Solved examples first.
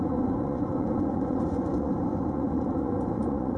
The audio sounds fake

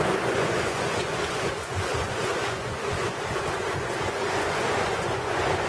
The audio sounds fake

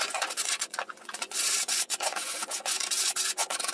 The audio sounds fake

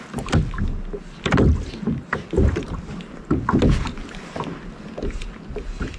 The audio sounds real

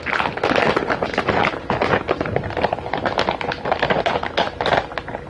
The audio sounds real